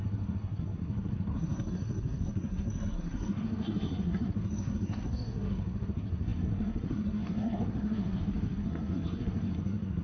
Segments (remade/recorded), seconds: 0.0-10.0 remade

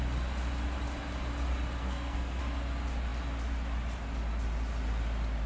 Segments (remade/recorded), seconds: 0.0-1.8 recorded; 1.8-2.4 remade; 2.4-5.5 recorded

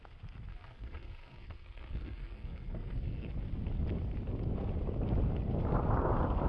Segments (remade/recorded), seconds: 0.0-0.5 recorded; 0.5-3.3 remade; 3.3-6.5 recorded

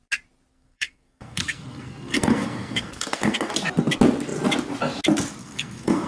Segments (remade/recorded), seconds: 0.0-0.5 recorded; 0.5-3.5 remade; 3.5-5.4 recorded; 5.4-6.1 remade

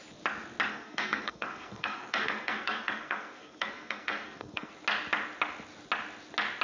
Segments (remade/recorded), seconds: 0.0-0.7 recorded; 0.7-4.7 remade; 4.7-6.6 recorded